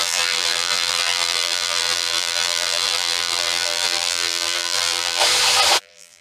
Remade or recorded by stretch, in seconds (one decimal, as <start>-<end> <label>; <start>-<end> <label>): 0.0-5.2 remade; 5.2-5.8 recorded; 5.8-6.2 remade